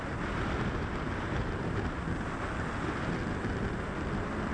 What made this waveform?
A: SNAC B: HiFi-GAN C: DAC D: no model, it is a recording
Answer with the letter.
D